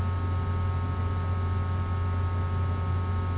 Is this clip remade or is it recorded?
recorded